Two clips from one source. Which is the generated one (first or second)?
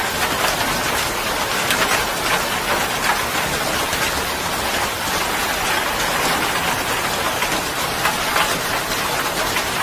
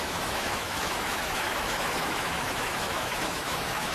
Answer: second